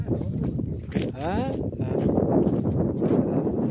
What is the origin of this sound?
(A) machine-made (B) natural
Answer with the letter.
B